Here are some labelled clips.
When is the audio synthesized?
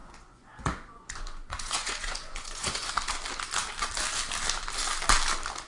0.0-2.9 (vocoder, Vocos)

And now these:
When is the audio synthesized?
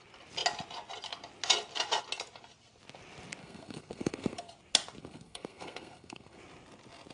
3.4-4.5 (codec, SNAC); 5.0-6.4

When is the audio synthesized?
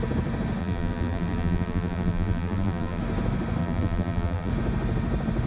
0.6-3.0 (vocoder, BigVGAN v2); 3.6-4.5